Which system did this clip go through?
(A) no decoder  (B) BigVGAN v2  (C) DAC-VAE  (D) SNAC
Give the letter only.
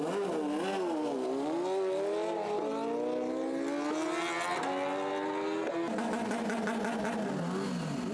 A